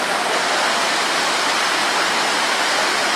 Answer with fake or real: real